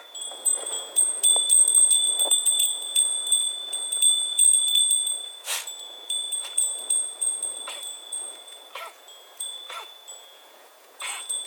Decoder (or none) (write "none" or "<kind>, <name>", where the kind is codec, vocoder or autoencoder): vocoder, Vocos